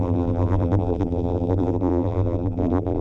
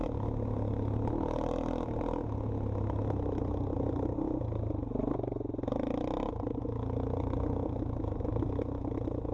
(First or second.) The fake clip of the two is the first